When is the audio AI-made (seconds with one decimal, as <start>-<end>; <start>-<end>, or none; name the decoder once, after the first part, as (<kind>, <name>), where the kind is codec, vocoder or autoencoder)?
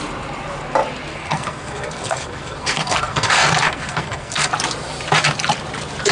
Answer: 1.1-4.5 (codec, SNAC)